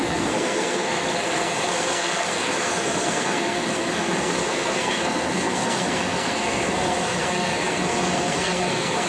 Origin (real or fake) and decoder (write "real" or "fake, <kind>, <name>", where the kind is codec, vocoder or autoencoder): fake, codec, SNAC